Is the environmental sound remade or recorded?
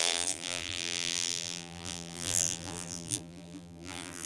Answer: remade